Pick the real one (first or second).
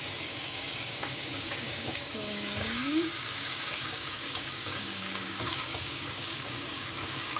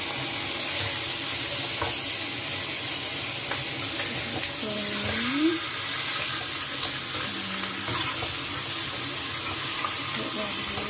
second